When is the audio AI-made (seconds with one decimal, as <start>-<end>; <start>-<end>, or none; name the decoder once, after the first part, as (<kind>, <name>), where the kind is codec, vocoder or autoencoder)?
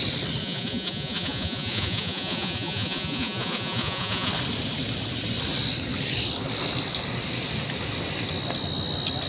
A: 0.4-4.3 (vocoder, Vocos)